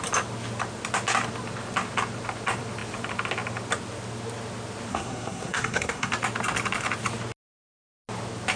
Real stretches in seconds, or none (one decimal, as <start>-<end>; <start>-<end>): 0.0-4.9; 6.1-8.6